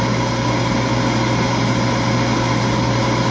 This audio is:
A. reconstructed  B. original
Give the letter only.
B